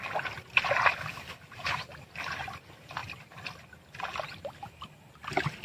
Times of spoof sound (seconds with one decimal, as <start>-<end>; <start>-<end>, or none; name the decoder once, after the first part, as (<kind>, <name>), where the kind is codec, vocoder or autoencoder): none